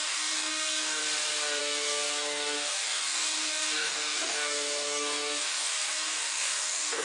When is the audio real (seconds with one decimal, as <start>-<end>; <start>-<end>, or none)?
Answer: 1.0-1.6